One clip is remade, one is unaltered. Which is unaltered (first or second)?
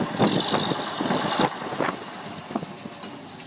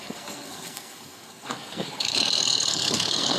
first